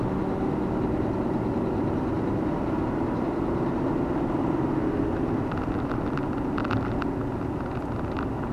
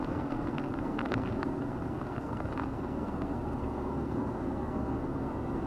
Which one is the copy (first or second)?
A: second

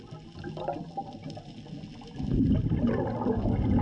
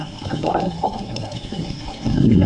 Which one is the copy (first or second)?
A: second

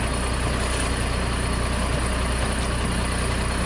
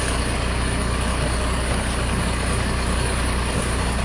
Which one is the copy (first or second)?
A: second